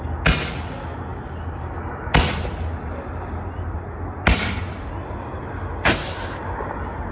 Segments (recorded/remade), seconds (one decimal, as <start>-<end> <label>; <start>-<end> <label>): 0.0-7.1 recorded